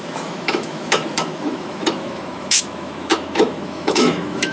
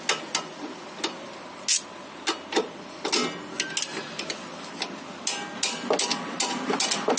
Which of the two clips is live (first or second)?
second